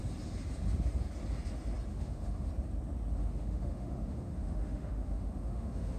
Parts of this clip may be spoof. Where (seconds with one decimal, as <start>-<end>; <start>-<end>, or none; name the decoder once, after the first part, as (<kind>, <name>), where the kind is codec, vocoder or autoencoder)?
1.9-2.5 (autoencoder, DAC-VAE); 3.2-6.0